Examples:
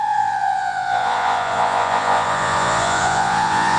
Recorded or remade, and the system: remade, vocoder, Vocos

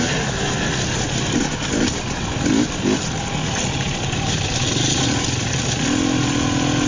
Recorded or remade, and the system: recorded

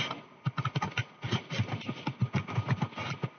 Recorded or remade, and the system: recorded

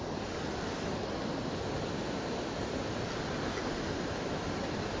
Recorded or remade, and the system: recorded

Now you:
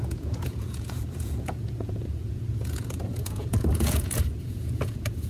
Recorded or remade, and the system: remade, vocoder, Vocos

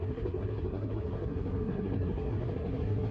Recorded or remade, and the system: remade, codec, SNAC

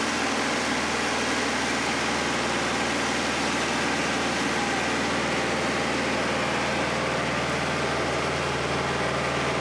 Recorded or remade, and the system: recorded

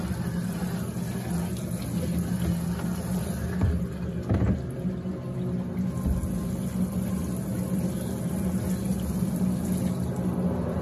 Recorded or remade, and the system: recorded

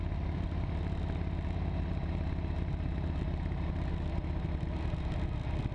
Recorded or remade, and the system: recorded